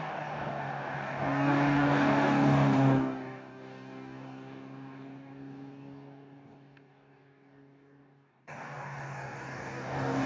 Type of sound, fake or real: fake